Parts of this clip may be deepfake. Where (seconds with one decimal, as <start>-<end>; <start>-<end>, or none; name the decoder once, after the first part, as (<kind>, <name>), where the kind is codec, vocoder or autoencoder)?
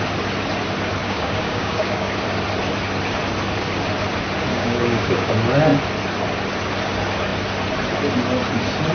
1.0-2.1 (codec, DAC); 4.5-5.3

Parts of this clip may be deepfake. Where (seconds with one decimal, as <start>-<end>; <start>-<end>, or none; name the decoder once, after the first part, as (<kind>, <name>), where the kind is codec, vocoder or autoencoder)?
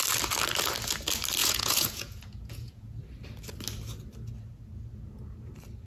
1.4-3.0 (vocoder, Vocos)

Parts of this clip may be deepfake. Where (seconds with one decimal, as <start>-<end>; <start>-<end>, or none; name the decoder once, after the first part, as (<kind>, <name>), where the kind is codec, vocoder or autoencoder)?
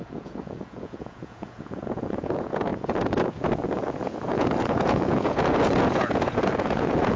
0.0-7.2 (vocoder, Vocos)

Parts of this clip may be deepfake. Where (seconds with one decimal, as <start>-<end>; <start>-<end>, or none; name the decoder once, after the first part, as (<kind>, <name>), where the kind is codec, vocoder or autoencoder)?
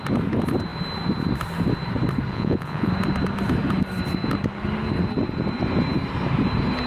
2.3-2.9 (vocoder, Vocos)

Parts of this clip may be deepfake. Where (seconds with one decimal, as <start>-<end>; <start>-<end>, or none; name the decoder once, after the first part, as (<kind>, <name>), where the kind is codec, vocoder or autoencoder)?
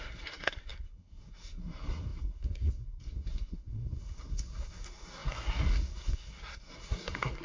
0.0-7.4 (codec, SNAC)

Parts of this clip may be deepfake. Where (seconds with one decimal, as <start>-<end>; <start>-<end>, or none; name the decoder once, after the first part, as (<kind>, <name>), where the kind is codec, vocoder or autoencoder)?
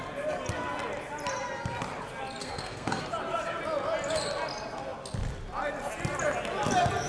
2.4-3.0 (codec, SNAC)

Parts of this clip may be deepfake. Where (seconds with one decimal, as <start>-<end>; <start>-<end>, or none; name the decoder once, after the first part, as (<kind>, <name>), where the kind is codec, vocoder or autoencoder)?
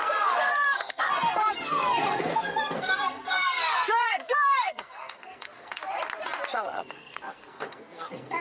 0.0-5.8 (codec, SNAC); 6.5-8.4